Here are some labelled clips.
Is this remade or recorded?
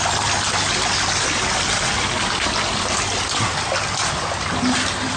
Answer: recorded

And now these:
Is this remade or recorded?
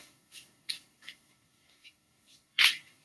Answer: remade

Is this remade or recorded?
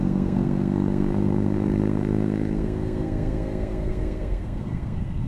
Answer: remade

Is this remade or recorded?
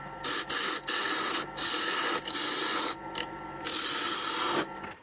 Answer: recorded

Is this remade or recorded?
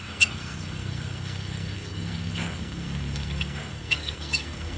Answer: remade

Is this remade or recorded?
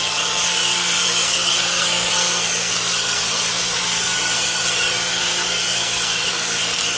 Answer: remade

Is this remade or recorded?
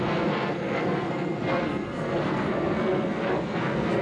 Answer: remade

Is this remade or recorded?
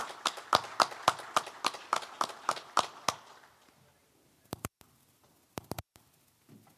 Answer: recorded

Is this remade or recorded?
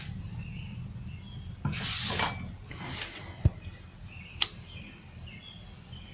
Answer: recorded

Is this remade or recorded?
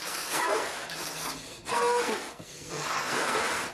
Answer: remade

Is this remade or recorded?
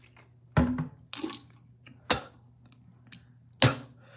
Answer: recorded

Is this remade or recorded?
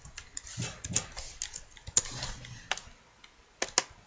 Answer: recorded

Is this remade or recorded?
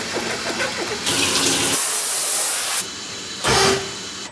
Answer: recorded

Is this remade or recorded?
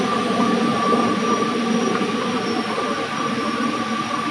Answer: recorded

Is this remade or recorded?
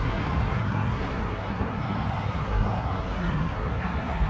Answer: remade